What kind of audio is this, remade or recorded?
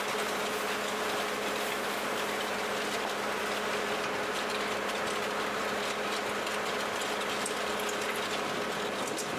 recorded